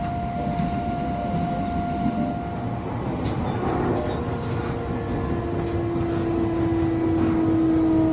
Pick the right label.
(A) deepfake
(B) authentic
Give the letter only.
B